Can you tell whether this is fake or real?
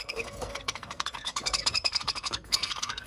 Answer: fake